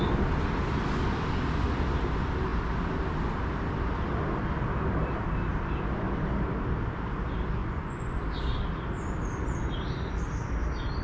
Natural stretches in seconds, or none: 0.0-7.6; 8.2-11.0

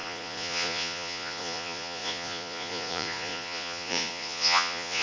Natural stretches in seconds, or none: none

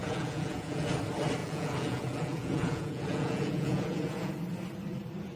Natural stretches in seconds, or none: 0.9-1.4; 4.3-5.4